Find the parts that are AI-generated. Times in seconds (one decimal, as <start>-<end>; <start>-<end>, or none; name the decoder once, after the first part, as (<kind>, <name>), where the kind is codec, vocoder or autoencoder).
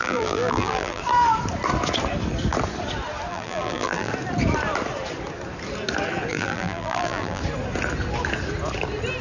0.0-1.0 (vocoder, BigVGAN v2); 3.3-4.1; 6.3-7.4